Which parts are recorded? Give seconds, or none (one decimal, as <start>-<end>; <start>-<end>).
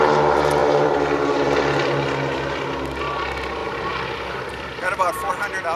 0.0-0.6; 3.0-3.6; 5.3-5.8